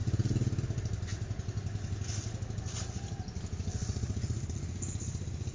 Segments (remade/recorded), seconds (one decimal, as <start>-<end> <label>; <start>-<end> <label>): 0.0-5.5 recorded